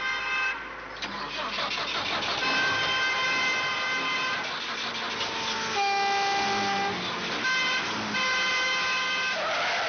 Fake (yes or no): no